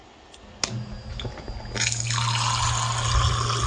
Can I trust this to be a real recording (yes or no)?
yes